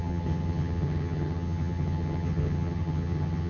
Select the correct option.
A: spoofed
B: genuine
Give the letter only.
A